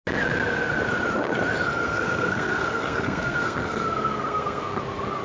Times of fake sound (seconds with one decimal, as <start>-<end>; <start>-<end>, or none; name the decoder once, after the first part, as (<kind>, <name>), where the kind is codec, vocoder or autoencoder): 1.8-4.8 (codec, SNAC)